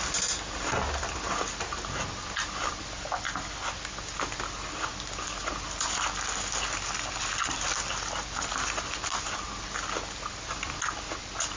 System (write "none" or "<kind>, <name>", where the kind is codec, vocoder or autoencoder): none